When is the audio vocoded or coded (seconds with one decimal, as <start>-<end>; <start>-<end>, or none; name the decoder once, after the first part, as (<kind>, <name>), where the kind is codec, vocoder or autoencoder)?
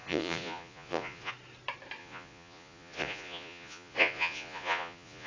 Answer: 0.0-1.3 (vocoder, Vocos); 2.0-5.3